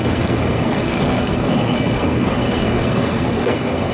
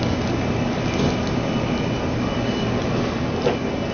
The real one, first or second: second